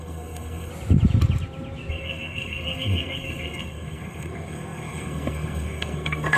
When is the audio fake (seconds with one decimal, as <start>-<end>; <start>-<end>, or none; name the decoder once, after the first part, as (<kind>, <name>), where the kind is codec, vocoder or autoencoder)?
0.0-0.7 (codec, SNAC); 1.9-6.4